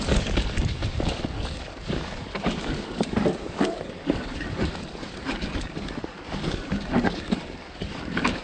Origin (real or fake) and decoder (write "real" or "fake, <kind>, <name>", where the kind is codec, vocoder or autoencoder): fake, codec, DAC